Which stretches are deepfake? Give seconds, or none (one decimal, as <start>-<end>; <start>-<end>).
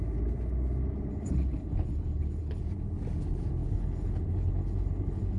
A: 1.1-2.6; 3.6-5.4